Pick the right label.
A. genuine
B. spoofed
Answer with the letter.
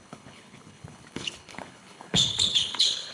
B